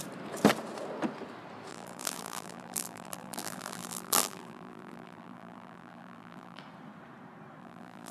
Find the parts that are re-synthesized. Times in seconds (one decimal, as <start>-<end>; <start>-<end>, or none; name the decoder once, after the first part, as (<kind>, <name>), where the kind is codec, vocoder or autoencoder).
1.7-6.6 (vocoder, BigVGAN v2); 7.6-8.1

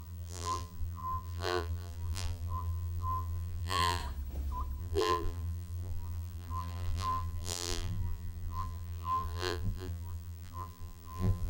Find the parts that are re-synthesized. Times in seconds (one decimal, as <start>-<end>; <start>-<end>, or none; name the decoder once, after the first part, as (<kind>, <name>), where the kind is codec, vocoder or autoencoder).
0.0-4.0 (vocoder, BigVGAN v2); 4.8-11.5

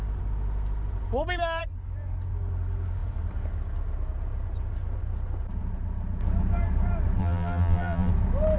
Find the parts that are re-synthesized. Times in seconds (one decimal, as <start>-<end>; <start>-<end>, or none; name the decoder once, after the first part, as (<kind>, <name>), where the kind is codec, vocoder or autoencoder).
7.2-8.1 (vocoder, BigVGAN v2)

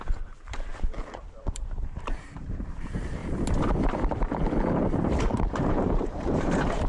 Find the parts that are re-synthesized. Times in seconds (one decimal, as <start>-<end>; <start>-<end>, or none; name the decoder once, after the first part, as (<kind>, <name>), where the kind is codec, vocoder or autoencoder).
0.0-3.2 (vocoder, BigVGAN v2); 4.7-6.9

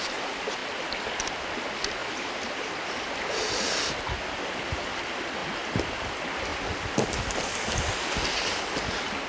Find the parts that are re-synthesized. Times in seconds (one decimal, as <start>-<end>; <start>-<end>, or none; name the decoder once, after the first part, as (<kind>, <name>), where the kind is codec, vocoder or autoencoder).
2.0-3.8 (vocoder, BigVGAN v2); 6.5-7.3

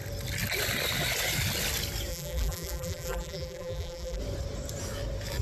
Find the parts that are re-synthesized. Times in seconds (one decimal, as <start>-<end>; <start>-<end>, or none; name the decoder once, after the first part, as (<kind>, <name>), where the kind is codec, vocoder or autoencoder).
2.1-4.2 (vocoder, BigVGAN v2)

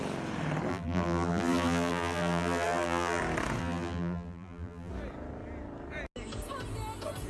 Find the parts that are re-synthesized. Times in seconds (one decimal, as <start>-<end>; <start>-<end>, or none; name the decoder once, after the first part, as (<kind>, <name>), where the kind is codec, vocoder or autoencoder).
0.7-3.2 (vocoder, BigVGAN v2); 3.6-4.9

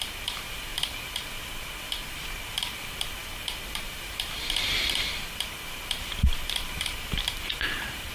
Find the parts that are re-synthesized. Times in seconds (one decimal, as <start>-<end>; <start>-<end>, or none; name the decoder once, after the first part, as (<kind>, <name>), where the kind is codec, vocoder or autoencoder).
0.0-8.1 (vocoder, BigVGAN v2)